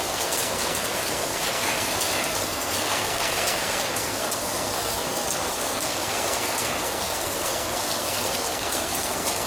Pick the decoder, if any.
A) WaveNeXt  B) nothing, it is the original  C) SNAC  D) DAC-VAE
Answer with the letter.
C